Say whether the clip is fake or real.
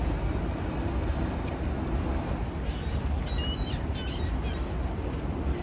real